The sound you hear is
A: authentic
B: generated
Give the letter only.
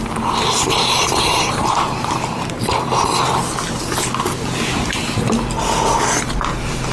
A